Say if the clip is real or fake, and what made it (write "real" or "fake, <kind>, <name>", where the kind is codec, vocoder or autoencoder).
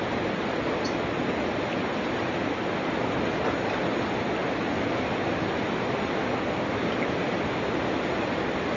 real